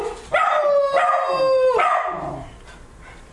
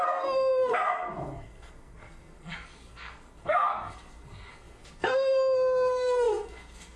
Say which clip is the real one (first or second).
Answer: first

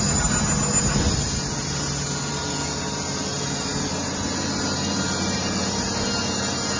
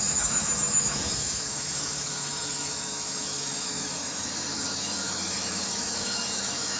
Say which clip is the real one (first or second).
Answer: first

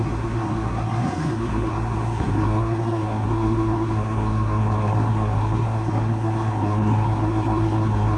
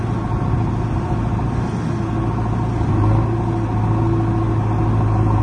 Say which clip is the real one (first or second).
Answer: second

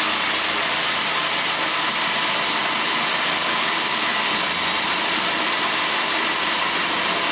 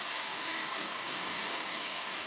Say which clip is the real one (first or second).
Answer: first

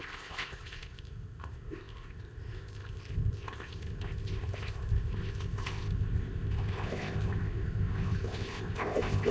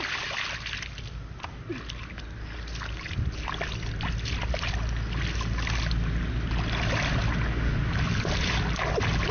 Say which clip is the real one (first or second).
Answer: second